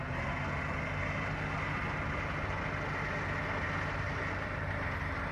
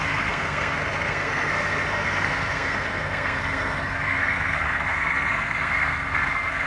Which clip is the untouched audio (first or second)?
first